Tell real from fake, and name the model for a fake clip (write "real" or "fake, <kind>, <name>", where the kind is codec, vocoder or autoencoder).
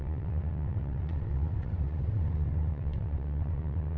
fake, vocoder, WaveNeXt